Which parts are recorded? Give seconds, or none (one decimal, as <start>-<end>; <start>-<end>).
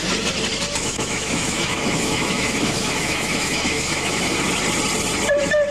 0.0-0.8; 4.2-5.7